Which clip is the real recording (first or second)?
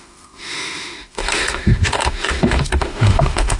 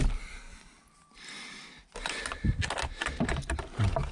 second